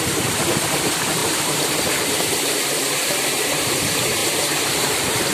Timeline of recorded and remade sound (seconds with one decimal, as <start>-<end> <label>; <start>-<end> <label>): 0.0-5.3 remade